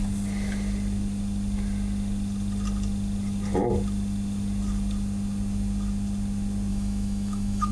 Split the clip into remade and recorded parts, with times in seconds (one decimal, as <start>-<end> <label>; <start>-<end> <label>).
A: 0.0-6.7 recorded; 6.7-7.7 remade